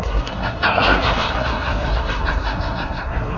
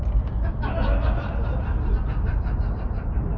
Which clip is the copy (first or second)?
first